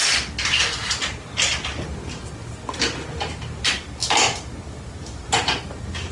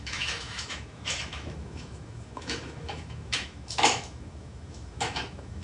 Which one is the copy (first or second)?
second